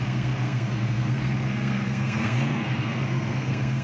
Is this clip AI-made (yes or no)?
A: yes